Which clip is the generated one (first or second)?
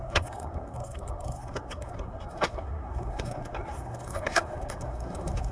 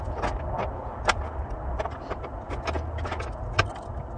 first